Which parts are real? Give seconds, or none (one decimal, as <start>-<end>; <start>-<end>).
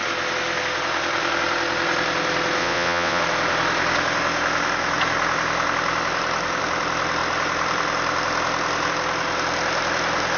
0.0-2.6; 3.2-10.4